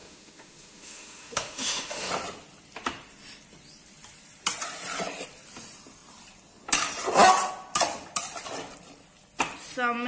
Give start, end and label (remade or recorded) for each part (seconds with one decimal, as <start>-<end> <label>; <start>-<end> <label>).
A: 0.0-2.1 remade; 2.1-10.1 recorded